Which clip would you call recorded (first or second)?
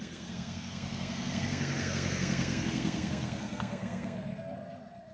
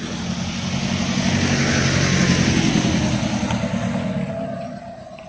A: second